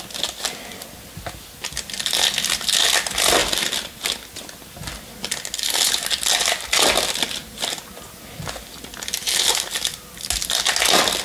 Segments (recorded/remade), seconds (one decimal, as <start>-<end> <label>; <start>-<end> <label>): 0.0-11.2 recorded